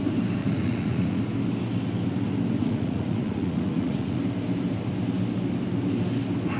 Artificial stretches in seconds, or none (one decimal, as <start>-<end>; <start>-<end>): 0.4-1.2; 2.6-4.2